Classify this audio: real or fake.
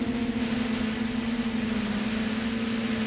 real